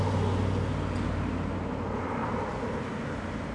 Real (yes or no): yes